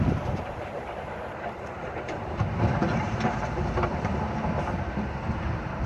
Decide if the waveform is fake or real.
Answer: fake